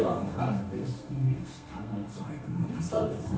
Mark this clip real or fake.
fake